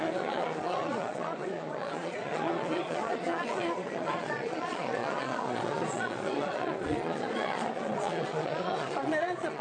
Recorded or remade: remade